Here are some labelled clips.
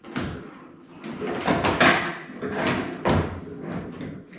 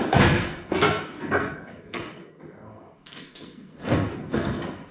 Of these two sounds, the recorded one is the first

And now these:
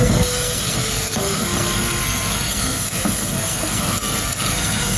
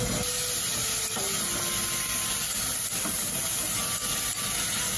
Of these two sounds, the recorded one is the second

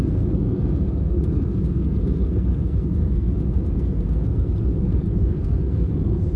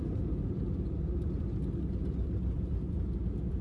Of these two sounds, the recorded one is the second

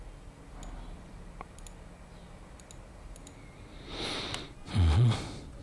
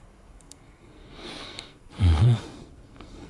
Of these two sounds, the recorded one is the first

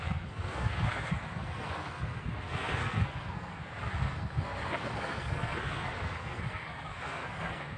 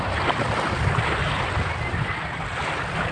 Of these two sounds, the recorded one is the second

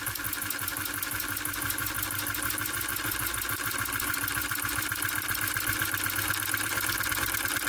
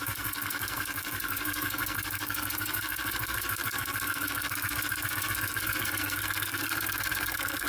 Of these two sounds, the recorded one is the first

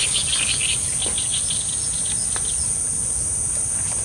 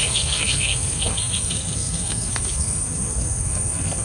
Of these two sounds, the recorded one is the first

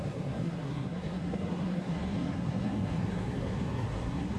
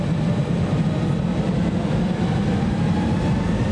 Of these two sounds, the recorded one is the second